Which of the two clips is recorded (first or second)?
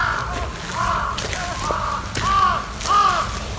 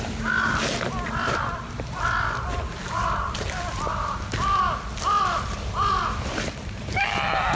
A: first